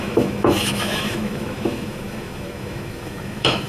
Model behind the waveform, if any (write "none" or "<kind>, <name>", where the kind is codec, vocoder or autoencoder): autoencoder, DAC-VAE